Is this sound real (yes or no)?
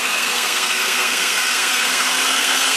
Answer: no